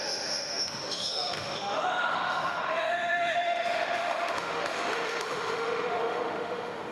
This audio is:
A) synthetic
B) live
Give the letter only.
A